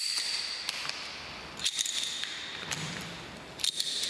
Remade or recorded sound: recorded